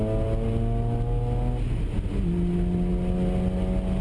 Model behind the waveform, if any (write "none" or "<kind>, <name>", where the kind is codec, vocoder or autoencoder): none